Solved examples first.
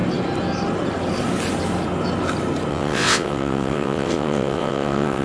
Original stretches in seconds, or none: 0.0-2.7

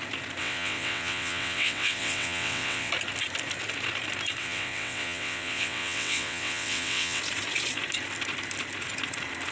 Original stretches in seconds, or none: 0.0-0.4; 2.9-4.4; 7.2-9.5

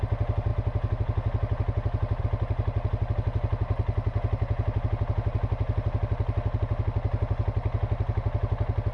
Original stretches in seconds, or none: 0.0-8.9

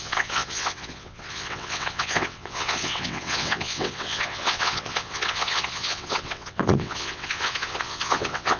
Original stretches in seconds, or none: none

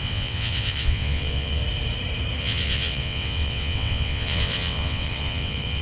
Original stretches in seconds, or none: 1.6-2.4

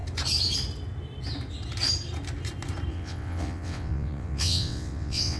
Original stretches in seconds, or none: 0.0-2.9

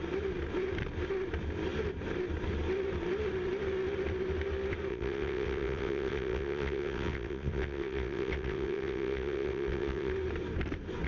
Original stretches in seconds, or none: 0.0-4.9; 10.1-11.1

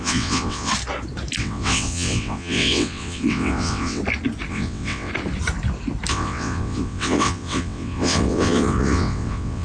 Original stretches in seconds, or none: 0.7-1.4; 4.0-4.5; 5.1-6.1